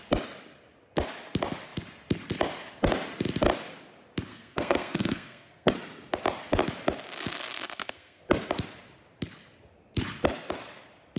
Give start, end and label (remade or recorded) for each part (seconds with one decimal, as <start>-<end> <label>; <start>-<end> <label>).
0.0-4.3 recorded; 4.3-5.7 remade; 5.7-7.3 recorded; 7.3-8.2 remade; 8.2-11.2 recorded